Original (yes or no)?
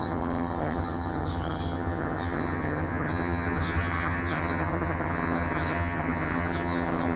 no